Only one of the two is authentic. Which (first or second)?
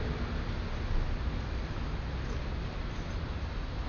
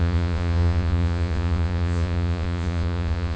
first